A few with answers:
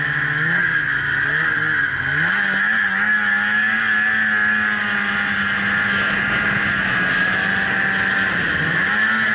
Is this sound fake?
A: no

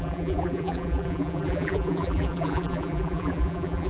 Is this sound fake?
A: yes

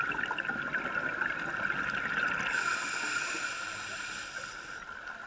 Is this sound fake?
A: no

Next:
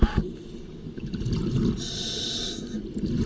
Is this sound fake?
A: no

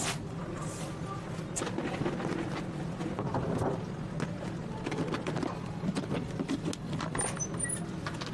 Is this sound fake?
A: no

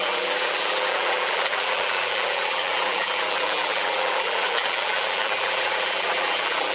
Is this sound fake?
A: yes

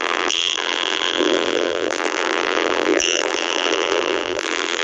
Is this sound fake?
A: yes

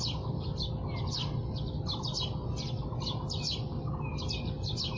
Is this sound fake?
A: no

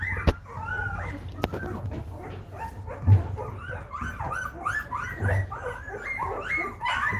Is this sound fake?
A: no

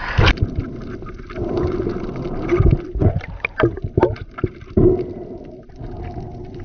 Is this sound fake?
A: no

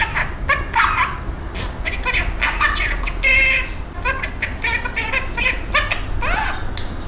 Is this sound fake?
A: no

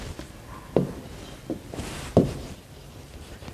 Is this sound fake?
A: no